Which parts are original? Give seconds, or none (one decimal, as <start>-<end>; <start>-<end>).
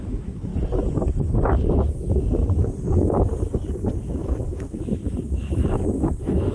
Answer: 0.5-2.9; 3.3-4.0